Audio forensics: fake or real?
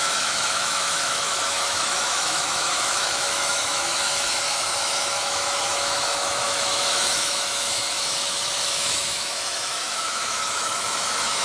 fake